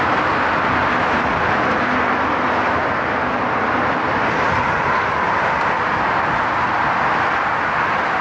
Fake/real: real